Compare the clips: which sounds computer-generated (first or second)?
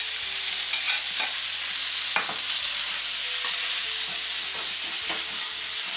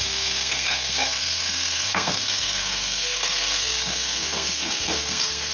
second